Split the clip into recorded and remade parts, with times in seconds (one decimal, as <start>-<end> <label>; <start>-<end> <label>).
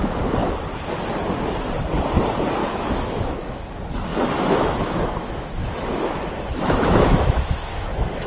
0.0-2.6 recorded; 2.6-3.6 remade; 3.6-4.1 recorded; 4.1-8.3 remade